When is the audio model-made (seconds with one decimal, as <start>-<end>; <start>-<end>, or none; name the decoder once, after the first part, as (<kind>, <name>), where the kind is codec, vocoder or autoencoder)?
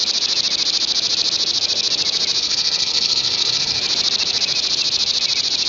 2.4-3.8 (codec, SNAC)